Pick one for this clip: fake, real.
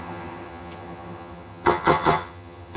fake